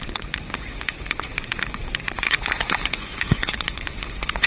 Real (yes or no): no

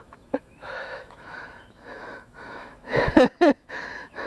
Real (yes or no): no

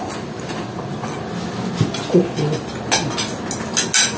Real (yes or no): yes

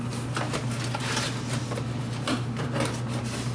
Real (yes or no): yes